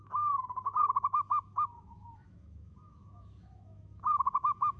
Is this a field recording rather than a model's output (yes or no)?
no